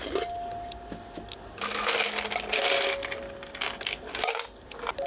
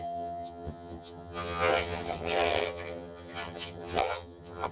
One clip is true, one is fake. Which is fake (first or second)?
second